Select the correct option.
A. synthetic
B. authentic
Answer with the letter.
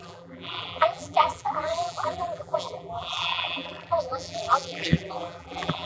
A